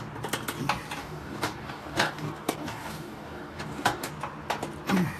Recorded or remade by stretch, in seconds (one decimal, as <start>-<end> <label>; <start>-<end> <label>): 0.0-1.0 recorded; 1.0-4.1 remade; 4.1-5.2 recorded